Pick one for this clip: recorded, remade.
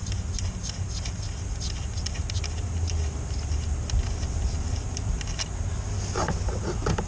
recorded